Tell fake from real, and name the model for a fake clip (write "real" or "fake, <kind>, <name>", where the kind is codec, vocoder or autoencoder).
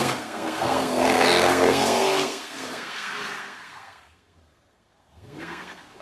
fake, codec, SNAC